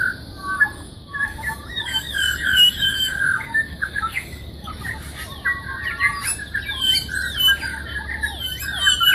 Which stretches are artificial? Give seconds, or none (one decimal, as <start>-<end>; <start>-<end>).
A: 0.4-4.7

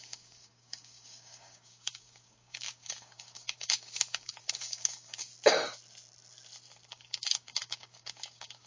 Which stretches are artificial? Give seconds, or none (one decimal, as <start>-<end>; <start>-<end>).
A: 0.0-5.3; 6.9-8.7